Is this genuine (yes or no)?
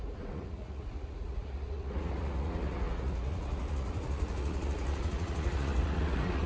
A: no